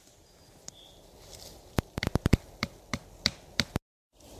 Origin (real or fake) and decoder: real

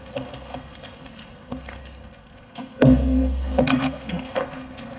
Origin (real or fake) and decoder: fake, codec, SNAC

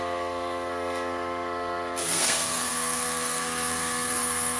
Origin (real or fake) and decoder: fake, codec, SNAC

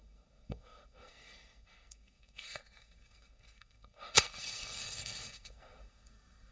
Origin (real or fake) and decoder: fake, codec, SNAC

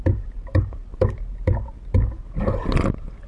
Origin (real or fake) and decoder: real